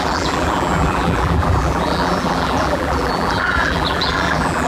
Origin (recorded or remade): remade